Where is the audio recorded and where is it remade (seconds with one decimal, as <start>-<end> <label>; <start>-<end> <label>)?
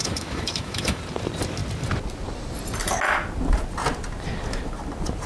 0.0-1.0 remade; 1.0-5.3 recorded